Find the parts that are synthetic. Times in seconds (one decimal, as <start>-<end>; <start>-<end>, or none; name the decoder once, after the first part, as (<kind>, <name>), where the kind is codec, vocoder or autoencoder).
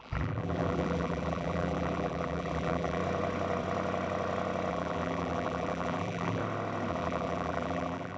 0.0-3.0 (vocoder, BigVGAN v2); 4.7-6.4; 6.9-8.2